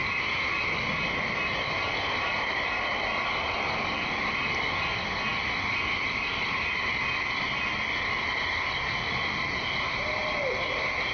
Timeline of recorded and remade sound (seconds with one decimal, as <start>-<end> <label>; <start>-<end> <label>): 0.0-11.1 recorded